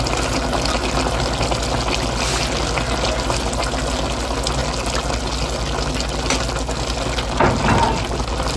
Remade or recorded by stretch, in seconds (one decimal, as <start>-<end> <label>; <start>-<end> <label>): 0.0-8.6 recorded